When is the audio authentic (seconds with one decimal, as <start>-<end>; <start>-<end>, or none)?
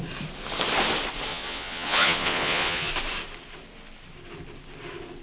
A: 0.0-1.3; 2.9-5.2